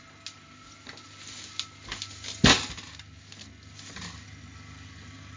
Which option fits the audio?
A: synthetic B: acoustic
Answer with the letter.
B